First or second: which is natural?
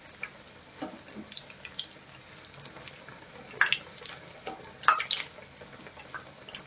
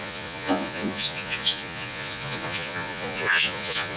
first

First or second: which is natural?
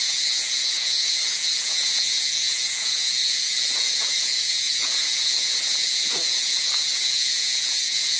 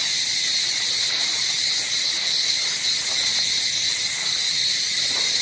second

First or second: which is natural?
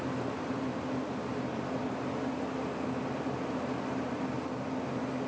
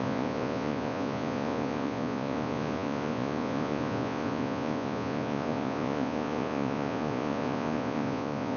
first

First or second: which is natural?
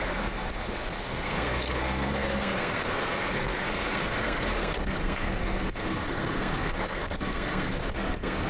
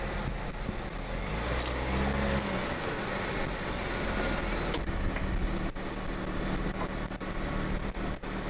second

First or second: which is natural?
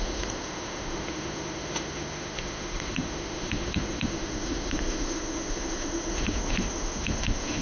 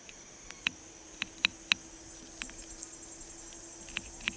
second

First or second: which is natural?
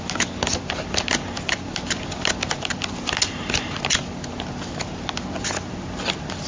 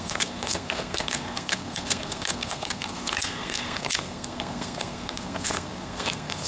first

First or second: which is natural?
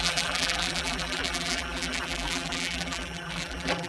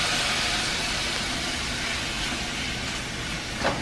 second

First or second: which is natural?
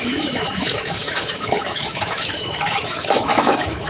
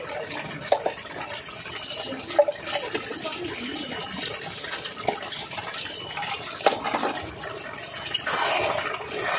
second